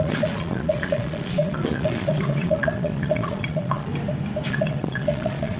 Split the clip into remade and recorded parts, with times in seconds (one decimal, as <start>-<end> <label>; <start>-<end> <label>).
0.0-3.9 remade; 3.9-4.5 recorded; 4.5-5.6 remade